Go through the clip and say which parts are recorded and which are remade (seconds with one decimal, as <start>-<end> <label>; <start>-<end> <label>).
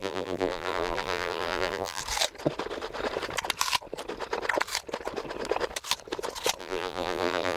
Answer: 0.0-2.0 remade; 2.0-6.6 recorded; 6.6-7.6 remade